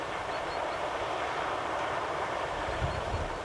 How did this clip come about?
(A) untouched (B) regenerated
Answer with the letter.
B